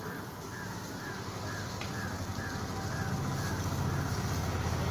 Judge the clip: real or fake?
real